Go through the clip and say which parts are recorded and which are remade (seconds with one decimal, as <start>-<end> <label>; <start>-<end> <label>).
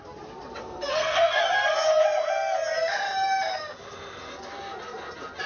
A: 0.0-0.6 recorded; 0.6-1.4 remade; 1.4-5.5 recorded